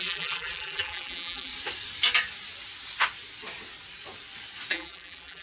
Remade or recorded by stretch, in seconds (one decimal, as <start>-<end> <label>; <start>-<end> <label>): 0.0-1.5 remade; 1.5-4.7 recorded; 4.7-5.4 remade